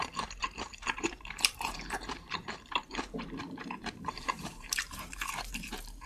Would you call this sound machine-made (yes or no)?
yes